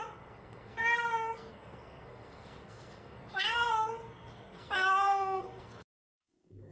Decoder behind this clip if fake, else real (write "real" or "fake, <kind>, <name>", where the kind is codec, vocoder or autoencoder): fake, codec, SNAC